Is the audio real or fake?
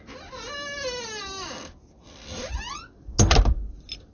real